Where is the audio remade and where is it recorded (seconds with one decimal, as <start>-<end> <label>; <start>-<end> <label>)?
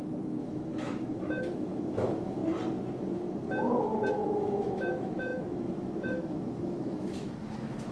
0.0-2.4 remade; 2.4-4.1 recorded; 4.1-7.9 remade